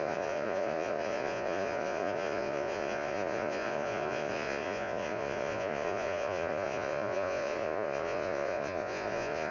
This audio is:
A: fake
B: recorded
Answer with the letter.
A